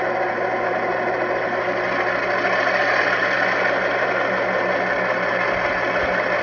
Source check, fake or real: real